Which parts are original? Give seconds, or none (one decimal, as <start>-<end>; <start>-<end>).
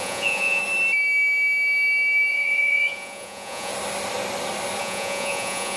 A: 0.6-2.3; 3.7-4.8